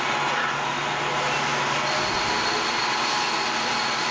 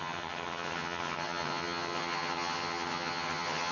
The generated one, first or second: second